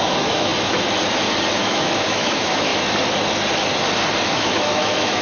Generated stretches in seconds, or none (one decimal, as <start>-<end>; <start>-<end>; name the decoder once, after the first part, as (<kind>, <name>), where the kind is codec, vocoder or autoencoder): 0.0-0.5 (autoencoder, DAC-VAE); 1.6-2.7; 4.2-5.2